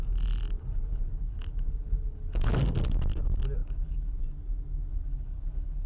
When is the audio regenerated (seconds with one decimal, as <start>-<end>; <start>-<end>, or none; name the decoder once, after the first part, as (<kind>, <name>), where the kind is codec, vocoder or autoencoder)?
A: 0.6-2.5 (codec, HILCodec); 3.6-4.2; 4.9-5.9